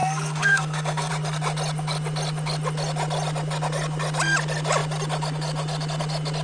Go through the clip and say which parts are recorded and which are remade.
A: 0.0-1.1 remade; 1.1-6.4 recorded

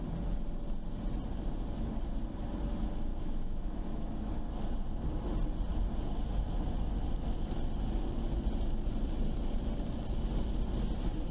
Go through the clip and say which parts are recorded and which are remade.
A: 0.0-3.1 recorded; 3.1-4.4 remade; 4.4-11.3 recorded

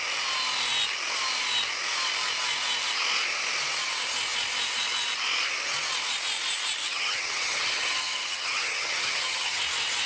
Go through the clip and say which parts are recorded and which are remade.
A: 0.0-6.8 recorded; 6.8-9.6 remade; 9.6-10.1 recorded